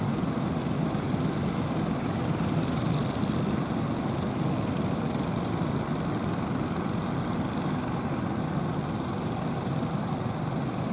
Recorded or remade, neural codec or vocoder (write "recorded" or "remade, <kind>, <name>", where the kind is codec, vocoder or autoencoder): recorded